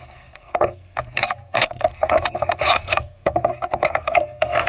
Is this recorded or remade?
remade